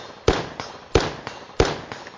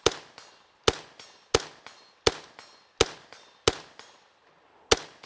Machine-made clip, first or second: first